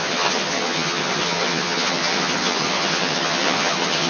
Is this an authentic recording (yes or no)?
no